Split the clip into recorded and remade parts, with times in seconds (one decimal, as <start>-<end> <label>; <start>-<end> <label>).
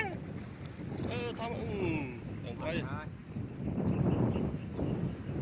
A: 0.0-5.4 recorded